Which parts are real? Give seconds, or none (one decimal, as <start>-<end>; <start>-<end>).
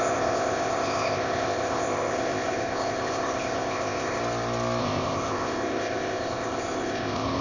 4.2-4.8